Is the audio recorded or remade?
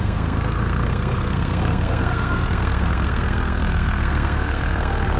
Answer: remade